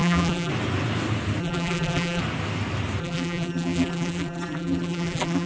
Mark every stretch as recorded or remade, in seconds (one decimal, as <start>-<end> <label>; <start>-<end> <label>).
0.0-0.5 remade; 0.5-1.4 recorded; 1.4-2.2 remade; 2.2-3.0 recorded; 3.0-5.5 remade